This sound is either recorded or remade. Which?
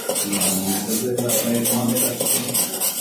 recorded